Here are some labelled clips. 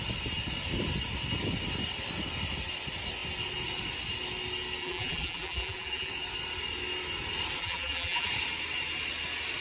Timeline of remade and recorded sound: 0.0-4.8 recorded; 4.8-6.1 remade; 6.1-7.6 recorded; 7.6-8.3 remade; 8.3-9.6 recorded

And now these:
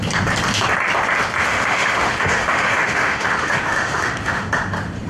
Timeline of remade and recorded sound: 0.0-1.4 recorded; 1.4-4.5 remade; 4.5-5.1 recorded

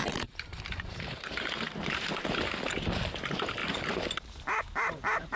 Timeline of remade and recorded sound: 0.0-2.1 remade; 2.1-3.6 recorded; 3.6-5.4 remade

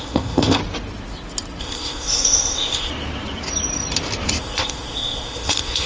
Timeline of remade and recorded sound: 0.0-0.6 remade; 0.6-1.6 recorded; 1.6-2.9 remade; 2.9-4.4 recorded; 4.4-5.9 remade

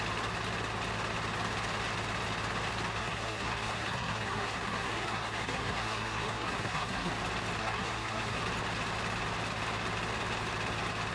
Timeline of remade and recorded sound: 0.0-3.0 recorded; 3.0-7.1 remade; 7.1-7.6 recorded; 7.6-8.4 remade; 8.4-11.1 recorded